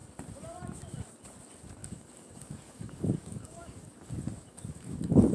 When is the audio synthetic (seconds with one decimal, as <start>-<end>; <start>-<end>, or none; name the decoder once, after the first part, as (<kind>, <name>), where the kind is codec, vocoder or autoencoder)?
1.8-5.3 (codec, DAC)